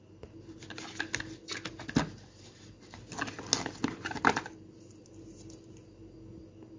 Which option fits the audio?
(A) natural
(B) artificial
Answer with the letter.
A